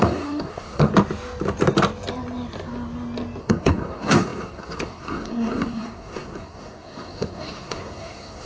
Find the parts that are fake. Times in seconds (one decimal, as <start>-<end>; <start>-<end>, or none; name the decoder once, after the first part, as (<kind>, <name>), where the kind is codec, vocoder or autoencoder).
0.0-0.9 (codec, SNAC); 3.4-8.4